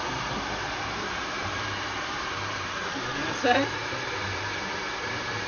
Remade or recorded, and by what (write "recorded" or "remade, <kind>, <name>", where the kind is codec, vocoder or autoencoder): remade, vocoder, BigVGAN v2